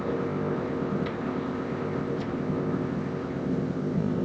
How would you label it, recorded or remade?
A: remade